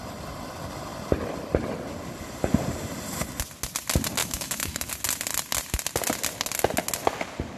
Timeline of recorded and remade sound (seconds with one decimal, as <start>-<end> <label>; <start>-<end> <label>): 0.0-4.2 recorded; 4.2-4.9 remade; 4.9-7.6 recorded